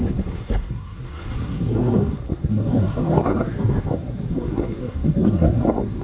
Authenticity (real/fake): fake